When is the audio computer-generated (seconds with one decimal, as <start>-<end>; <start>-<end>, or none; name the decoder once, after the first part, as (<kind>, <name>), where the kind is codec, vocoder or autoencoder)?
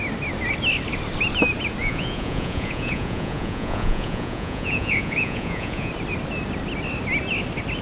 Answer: 1.8-5.9 (vocoder, Vocos)